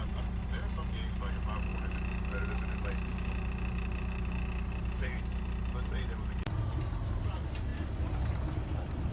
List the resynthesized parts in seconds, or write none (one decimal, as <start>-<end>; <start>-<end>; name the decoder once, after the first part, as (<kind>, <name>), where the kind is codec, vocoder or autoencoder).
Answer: none